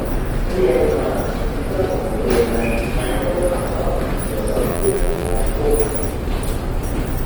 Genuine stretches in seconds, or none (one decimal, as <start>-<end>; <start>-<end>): 0.0-4.7; 5.4-7.3